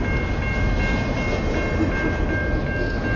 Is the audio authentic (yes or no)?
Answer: yes